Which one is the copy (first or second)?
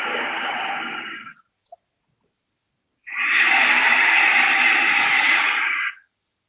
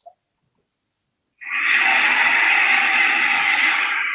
first